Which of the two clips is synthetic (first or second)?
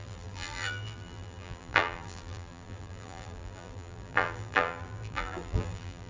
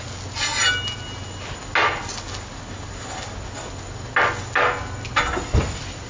first